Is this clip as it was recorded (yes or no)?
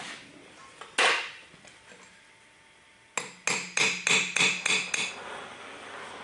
yes